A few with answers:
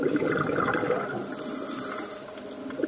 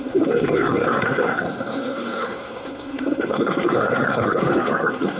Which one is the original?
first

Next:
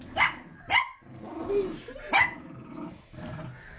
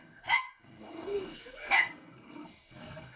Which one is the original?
first